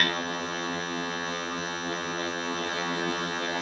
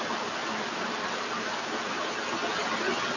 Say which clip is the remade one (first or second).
first